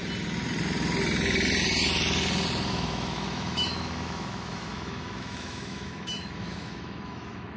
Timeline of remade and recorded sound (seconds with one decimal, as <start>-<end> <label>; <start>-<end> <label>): 0.0-2.7 recorded; 2.7-7.6 remade